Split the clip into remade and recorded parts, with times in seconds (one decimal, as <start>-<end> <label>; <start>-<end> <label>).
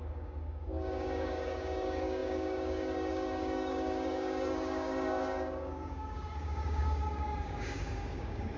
0.0-8.6 remade